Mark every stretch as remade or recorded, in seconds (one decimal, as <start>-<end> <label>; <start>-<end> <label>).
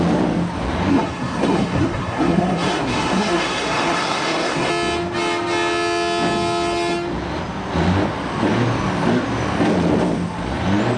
0.0-0.9 recorded; 0.9-4.7 remade; 4.7-11.0 recorded